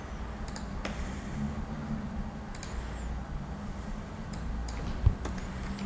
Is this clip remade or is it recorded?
recorded